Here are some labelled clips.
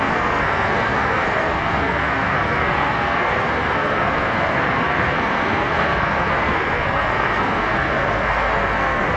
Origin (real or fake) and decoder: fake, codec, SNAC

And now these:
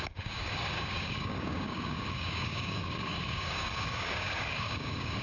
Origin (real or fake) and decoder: fake, codec, DAC